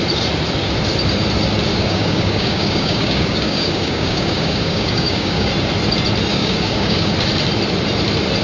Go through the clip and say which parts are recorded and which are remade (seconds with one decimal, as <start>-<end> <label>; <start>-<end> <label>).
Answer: 0.0-1.7 recorded; 1.7-5.5 remade; 5.5-6.3 recorded; 6.3-7.1 remade; 7.1-8.4 recorded